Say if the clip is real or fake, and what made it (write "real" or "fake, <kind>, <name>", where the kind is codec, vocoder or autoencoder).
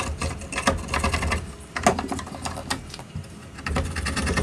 real